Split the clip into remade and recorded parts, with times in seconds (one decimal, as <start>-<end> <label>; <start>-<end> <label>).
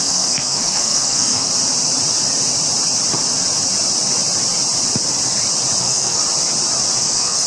0.0-1.5 remade; 1.5-5.8 recorded; 5.8-6.2 remade; 6.2-7.0 recorded; 7.0-7.5 remade